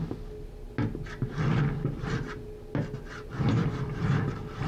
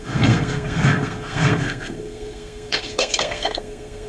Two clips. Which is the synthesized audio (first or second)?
second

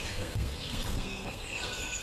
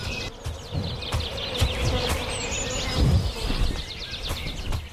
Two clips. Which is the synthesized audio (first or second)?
first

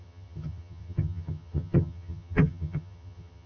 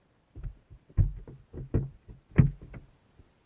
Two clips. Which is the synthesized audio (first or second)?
first